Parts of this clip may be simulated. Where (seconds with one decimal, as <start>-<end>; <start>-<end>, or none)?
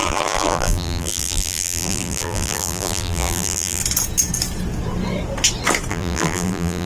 0.0-3.8; 5.9-6.9